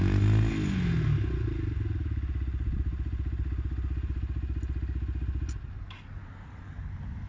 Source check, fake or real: real